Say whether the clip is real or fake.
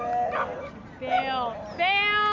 real